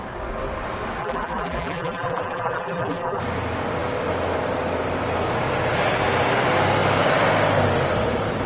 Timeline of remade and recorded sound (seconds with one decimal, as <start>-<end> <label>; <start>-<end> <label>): 0.0-1.0 recorded; 1.0-3.2 remade; 3.2-8.5 recorded

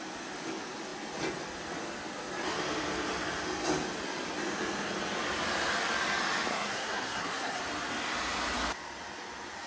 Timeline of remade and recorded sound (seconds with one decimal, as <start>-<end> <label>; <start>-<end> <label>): 0.0-6.5 recorded; 6.5-7.6 remade; 7.6-9.7 recorded

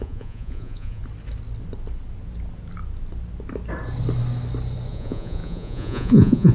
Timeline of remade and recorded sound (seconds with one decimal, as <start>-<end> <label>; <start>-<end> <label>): 0.0-1.0 remade; 1.0-4.9 recorded; 4.9-6.5 remade